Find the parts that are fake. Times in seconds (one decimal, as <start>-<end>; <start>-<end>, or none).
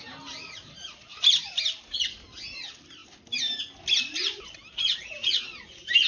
0.6-1.6; 3.0-3.6; 5.5-6.1